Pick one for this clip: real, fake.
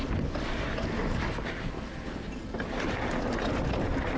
real